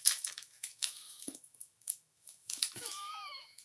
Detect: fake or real fake